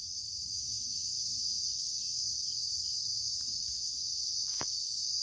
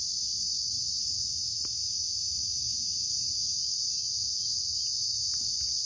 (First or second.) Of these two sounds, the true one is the second